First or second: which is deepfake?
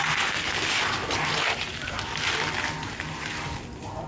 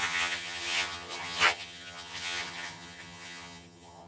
second